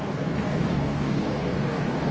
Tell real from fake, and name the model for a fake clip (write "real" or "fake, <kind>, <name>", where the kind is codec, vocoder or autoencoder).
fake, codec, DAC